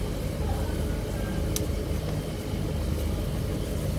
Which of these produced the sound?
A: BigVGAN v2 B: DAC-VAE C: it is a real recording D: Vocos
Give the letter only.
C